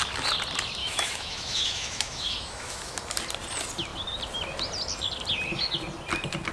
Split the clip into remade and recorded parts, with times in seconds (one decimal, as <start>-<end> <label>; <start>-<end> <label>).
0.0-0.8 recorded; 0.8-3.0 remade; 3.0-6.5 recorded